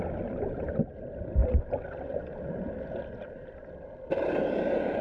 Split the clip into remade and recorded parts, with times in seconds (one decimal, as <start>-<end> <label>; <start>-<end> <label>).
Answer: 0.0-5.0 recorded